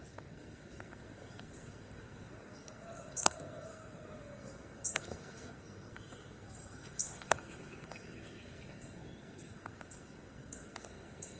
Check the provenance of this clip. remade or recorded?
remade